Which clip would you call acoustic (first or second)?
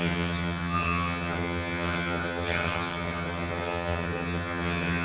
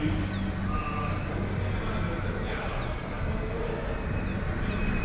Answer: second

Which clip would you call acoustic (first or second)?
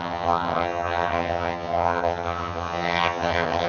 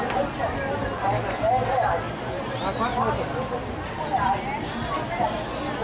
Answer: second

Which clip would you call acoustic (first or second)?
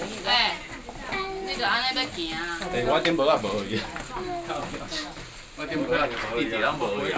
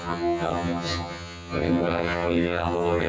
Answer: first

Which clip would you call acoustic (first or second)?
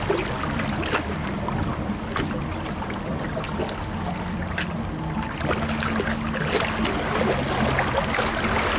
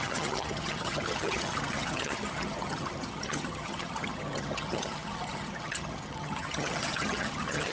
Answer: first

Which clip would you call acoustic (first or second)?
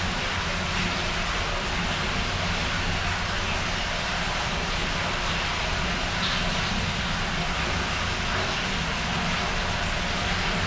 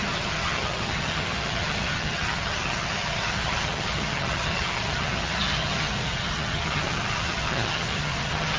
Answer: first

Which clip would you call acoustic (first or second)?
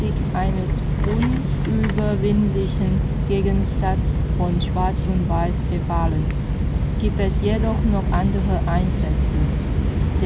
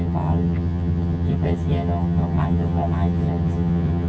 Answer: first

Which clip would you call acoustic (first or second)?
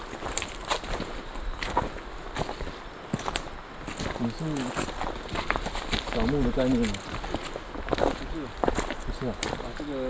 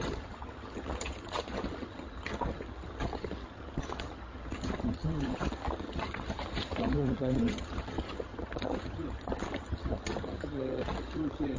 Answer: first